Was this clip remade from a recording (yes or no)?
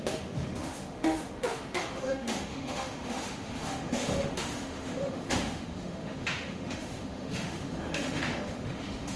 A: yes